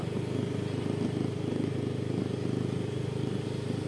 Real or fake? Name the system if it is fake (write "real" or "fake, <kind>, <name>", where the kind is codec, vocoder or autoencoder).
real